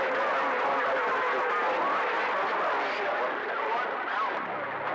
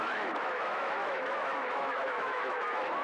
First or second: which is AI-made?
second